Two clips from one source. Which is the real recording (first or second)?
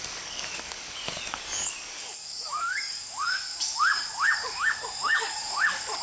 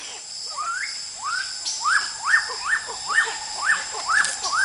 second